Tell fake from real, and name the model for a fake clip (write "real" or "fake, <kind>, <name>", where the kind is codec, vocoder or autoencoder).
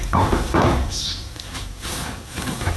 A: fake, codec, SNAC